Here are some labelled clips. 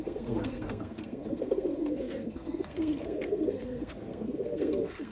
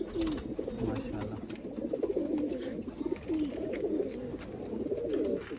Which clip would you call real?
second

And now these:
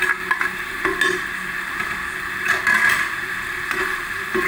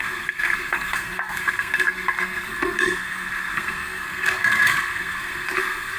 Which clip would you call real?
first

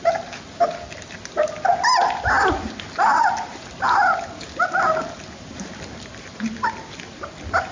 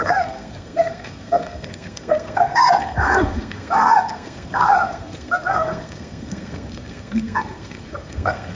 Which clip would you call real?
first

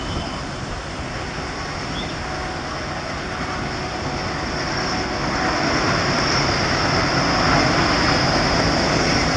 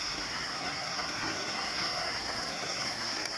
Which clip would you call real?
first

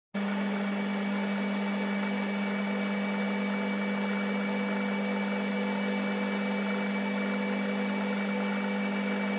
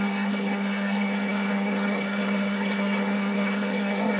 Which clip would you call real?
first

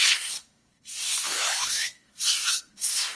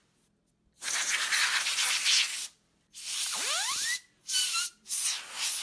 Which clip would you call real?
second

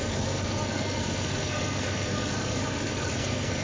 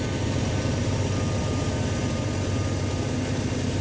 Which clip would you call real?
second